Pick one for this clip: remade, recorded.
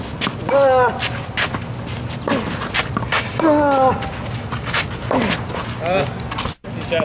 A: recorded